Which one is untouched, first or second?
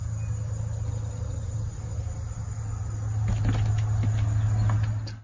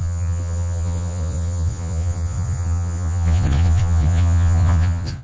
first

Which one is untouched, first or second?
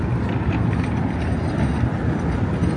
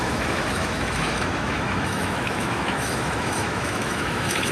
first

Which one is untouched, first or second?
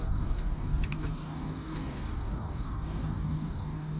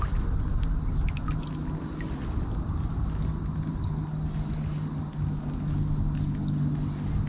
second